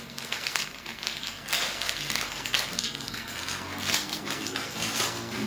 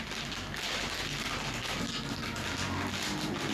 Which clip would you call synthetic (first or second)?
first